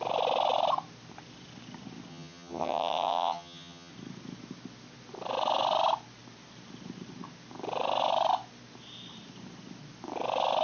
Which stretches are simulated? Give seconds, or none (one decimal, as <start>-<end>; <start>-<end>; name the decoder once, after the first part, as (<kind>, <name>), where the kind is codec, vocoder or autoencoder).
2.1-3.9 (vocoder, HiFi-GAN)